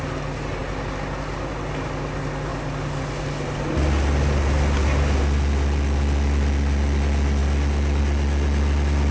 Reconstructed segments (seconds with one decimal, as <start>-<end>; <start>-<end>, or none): none